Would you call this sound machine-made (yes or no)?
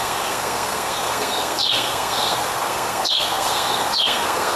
yes